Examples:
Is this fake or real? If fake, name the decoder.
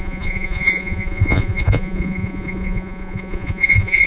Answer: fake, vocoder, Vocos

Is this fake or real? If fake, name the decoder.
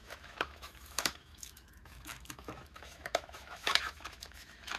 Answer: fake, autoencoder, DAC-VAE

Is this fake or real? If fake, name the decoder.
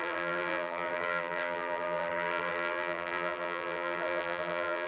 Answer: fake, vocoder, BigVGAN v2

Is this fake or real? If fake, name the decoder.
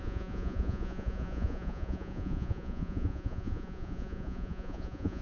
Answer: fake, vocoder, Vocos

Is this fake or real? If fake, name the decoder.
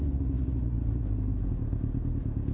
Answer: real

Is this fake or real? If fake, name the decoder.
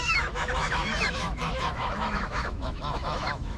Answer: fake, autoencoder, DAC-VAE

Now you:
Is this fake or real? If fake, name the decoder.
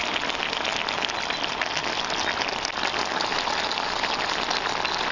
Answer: real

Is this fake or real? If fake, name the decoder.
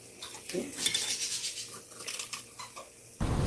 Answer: real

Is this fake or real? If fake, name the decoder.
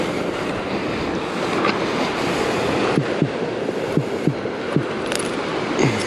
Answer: real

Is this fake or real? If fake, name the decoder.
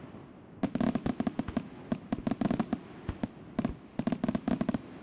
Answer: real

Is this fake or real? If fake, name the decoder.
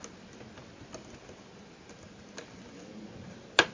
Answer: real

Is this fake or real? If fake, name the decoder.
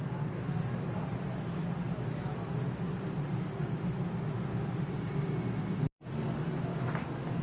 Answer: real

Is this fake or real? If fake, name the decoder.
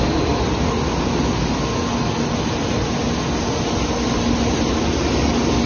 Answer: real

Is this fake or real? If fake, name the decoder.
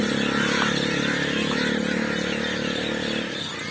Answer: real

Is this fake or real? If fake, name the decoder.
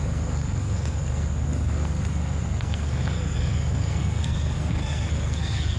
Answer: fake, codec, SNAC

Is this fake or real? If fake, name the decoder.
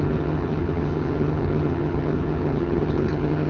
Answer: fake, vocoder, HiFi-GAN